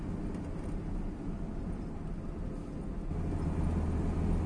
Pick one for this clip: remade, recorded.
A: recorded